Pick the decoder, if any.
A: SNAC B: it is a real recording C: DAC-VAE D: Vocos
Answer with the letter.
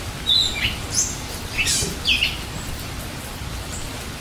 B